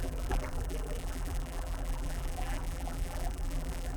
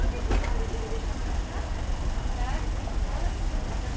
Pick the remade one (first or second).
first